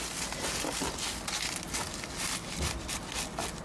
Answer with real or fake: real